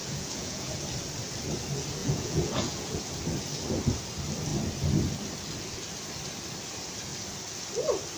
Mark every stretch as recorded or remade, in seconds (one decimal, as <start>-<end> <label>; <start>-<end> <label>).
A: 0.0-0.7 remade; 0.7-2.0 recorded; 2.0-3.0 remade; 3.0-8.2 recorded